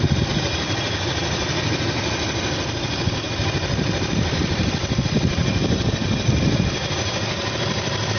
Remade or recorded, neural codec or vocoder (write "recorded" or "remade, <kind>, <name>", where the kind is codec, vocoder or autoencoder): recorded